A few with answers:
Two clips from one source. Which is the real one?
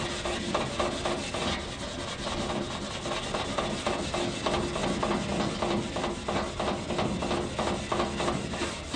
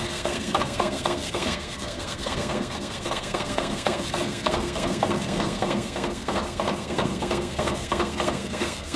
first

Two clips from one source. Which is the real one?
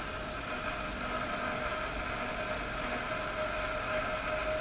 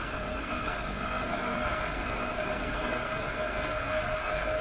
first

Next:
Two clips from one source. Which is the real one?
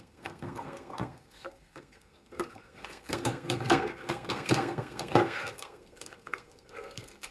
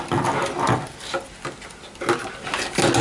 second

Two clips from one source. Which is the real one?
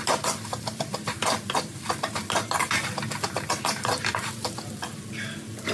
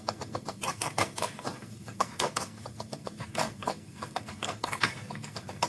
first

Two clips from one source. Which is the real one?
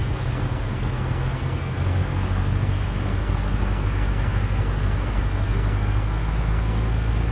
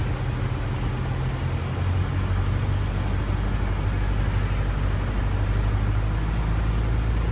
second